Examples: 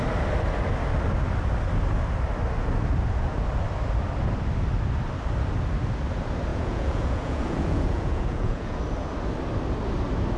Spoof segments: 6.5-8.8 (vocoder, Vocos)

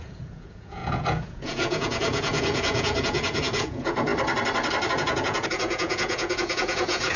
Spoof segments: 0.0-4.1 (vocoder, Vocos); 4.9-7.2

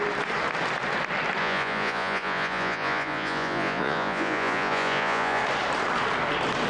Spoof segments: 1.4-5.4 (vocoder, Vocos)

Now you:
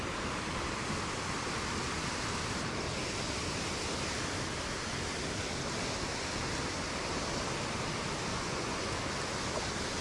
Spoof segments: 8.3-9.1 (vocoder, Vocos)